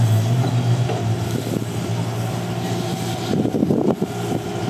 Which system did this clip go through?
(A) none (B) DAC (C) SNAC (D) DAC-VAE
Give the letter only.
A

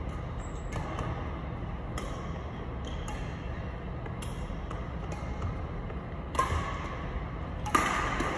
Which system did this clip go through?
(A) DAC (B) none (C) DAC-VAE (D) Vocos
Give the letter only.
B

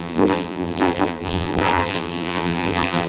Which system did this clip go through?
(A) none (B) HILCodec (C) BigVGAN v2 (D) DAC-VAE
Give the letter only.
C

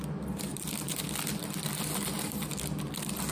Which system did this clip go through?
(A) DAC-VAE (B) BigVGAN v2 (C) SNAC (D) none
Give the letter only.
D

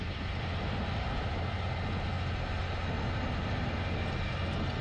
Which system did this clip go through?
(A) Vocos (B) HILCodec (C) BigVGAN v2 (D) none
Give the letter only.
D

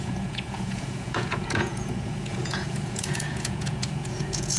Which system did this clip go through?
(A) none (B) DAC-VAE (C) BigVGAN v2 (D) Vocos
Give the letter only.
D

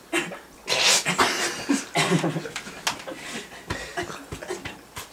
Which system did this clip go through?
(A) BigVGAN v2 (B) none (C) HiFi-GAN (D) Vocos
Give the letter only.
B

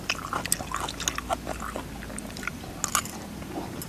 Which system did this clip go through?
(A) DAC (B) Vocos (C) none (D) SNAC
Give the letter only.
C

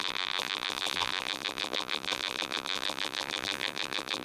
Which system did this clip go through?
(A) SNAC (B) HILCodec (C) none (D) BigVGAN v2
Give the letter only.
D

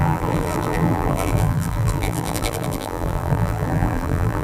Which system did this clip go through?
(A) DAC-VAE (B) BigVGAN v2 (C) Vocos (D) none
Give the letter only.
B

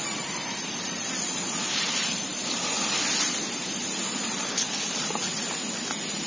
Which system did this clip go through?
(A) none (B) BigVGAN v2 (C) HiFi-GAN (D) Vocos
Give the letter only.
A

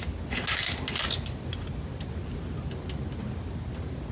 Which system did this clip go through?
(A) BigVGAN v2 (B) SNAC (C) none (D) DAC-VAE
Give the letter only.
C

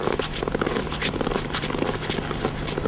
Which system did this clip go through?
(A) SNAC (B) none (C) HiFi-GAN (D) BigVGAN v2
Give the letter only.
B